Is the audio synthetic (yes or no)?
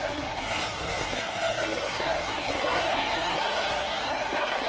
yes